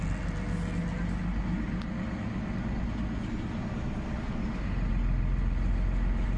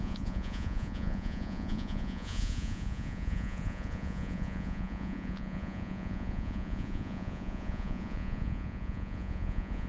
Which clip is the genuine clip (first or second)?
first